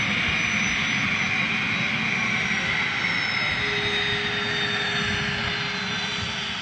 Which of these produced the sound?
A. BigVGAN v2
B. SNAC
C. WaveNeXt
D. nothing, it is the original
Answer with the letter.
D